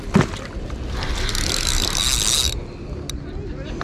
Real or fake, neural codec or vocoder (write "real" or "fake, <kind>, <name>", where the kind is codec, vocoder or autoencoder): real